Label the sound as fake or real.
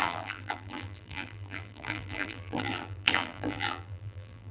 fake